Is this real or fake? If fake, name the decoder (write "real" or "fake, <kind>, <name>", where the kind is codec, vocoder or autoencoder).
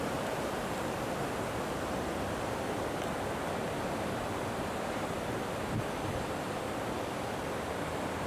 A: fake, vocoder, BigVGAN v2